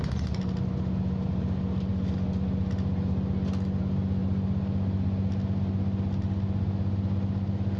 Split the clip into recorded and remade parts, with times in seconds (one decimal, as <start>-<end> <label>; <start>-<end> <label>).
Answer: 0.0-7.8 recorded